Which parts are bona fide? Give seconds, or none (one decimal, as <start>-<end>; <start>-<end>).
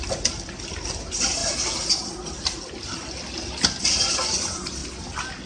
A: 0.0-5.5